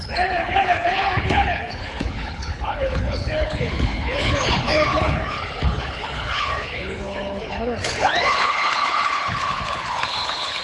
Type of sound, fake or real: fake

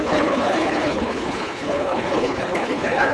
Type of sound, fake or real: fake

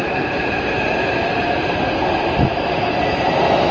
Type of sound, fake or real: real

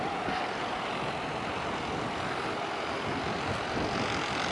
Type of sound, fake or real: real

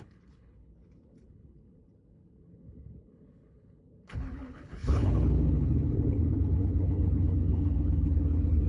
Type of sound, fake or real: fake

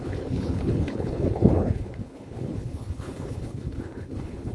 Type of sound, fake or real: fake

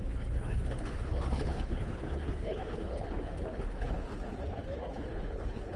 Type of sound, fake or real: fake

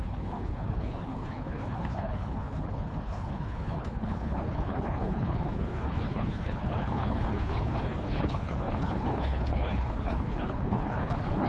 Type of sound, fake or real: fake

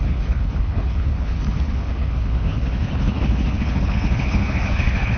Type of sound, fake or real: fake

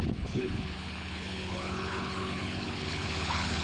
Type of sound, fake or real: fake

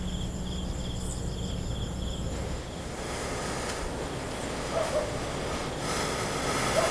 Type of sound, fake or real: real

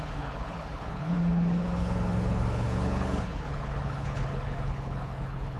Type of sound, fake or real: fake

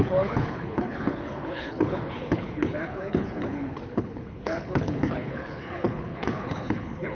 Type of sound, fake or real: fake